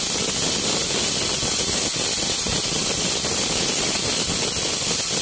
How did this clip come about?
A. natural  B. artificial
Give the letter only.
B